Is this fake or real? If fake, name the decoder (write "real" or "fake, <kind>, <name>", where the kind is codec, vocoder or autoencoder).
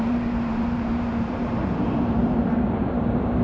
fake, vocoder, BigVGAN v2